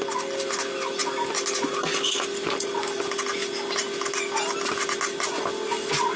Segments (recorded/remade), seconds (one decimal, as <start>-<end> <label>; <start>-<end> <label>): 0.0-6.2 recorded